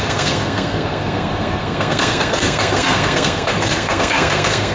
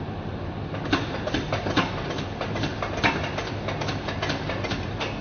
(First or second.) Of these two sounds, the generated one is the first